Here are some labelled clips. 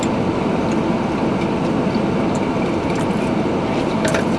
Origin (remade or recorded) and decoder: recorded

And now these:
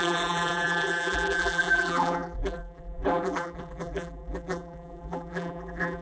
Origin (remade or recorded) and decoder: remade, vocoder, BigVGAN v2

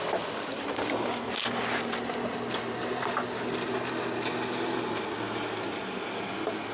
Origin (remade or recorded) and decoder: recorded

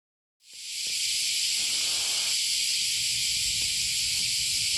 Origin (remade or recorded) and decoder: recorded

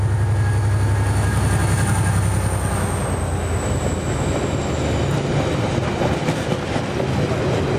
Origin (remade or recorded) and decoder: recorded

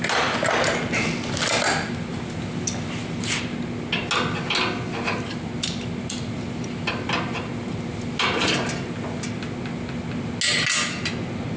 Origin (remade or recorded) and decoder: recorded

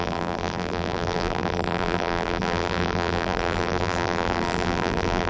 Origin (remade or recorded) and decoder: remade, vocoder, BigVGAN v2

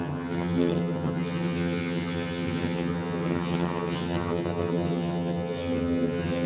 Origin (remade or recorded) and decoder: remade, vocoder, HiFi-GAN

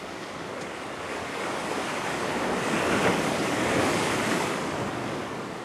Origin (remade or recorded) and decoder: remade, codec, DAC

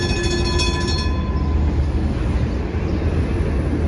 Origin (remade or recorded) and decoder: recorded